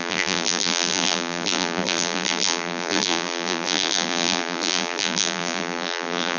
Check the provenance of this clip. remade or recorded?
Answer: remade